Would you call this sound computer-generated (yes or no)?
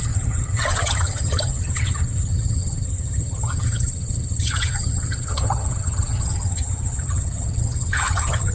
yes